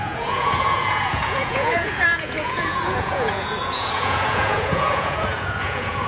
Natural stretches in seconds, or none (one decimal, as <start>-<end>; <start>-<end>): none